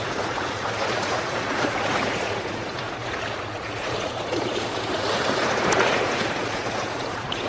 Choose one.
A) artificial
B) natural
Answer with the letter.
A